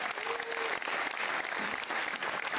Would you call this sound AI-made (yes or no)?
no